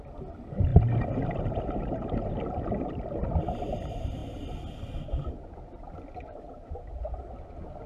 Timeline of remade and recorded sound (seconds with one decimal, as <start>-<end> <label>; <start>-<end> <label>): 0.0-0.7 recorded; 0.7-2.6 remade; 2.6-7.9 recorded